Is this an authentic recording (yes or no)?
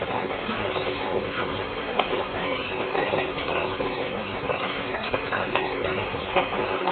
no